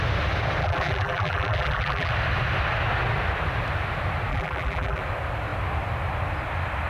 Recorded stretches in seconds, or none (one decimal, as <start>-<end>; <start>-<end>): 0.0-0.6; 2.1-4.3; 5.0-6.9